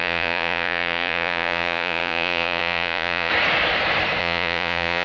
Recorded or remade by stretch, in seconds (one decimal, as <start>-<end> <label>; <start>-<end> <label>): 0.0-3.3 remade; 3.3-4.2 recorded; 4.2-5.0 remade